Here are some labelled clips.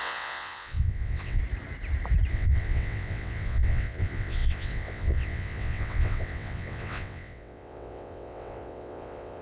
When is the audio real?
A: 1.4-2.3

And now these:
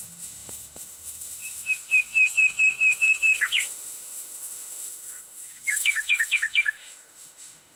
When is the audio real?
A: none

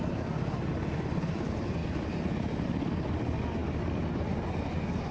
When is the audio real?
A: 0.0-5.1

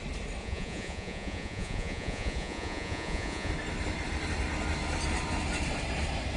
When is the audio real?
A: 0.0-0.4; 3.5-6.4